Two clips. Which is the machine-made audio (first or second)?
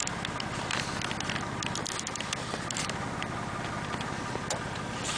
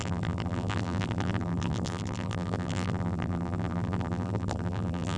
second